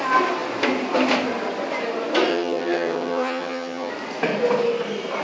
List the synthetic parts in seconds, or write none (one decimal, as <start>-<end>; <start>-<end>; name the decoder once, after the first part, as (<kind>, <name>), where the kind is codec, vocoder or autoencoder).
2.3-3.9 (vocoder, HiFi-GAN)